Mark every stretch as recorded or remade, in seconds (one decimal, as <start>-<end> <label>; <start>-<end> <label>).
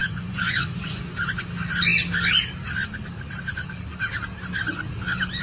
0.0-1.0 remade; 1.0-5.4 recorded